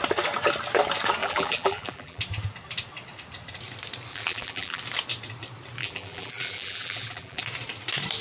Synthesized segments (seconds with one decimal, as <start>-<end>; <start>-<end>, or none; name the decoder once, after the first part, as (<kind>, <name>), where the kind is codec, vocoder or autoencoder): 1.2-2.2 (vocoder, BigVGAN v2); 4.1-4.8; 5.8-7.4